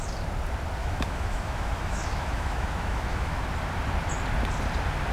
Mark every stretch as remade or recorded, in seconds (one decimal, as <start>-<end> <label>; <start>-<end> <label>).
0.0-0.8 recorded; 0.8-3.4 remade; 3.4-5.1 recorded